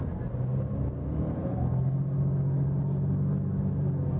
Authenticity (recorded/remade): recorded